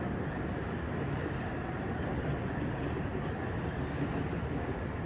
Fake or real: real